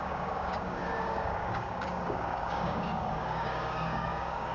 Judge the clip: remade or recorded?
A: remade